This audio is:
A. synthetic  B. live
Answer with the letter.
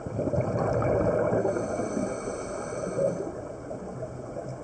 B